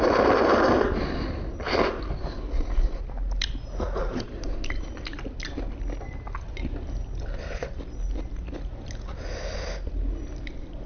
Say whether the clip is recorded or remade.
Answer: recorded